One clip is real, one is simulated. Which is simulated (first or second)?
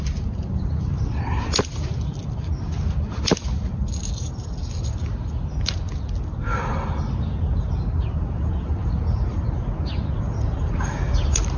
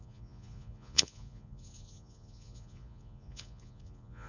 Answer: second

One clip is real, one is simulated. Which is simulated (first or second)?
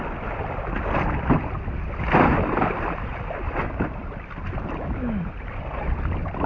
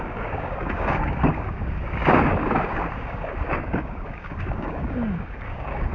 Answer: second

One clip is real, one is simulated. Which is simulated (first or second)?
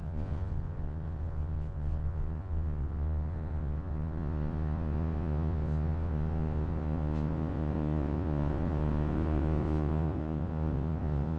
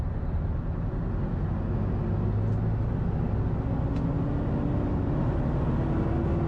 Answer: first